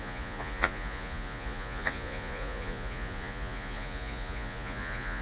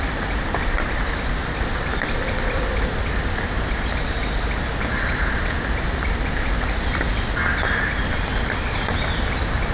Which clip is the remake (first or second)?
first